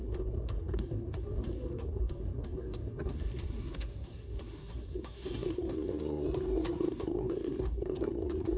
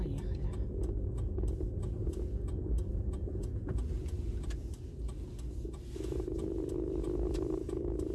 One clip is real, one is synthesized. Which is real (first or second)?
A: second